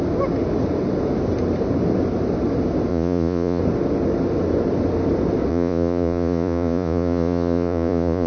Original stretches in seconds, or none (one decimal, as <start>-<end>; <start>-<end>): 0.0-2.9; 3.6-5.5